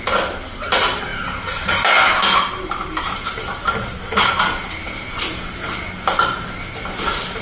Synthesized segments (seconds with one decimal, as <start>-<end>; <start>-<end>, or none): none